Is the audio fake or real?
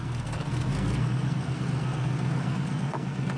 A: fake